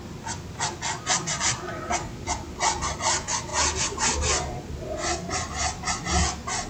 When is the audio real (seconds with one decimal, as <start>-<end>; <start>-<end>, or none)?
0.0-6.7